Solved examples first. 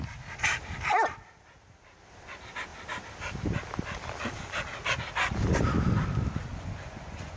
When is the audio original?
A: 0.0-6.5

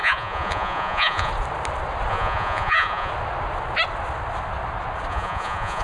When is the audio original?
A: 1.3-2.1; 3.1-5.1

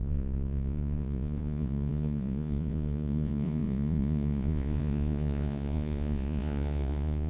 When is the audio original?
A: none

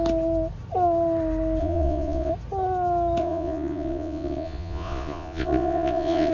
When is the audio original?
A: 0.0-1.6; 2.3-3.2